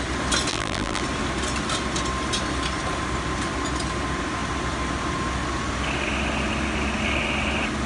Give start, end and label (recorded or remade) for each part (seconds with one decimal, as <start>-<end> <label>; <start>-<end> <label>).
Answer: 0.0-0.5 recorded; 0.5-1.0 remade; 1.0-7.9 recorded